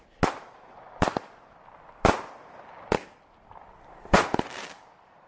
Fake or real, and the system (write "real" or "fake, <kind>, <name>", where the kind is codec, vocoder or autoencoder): real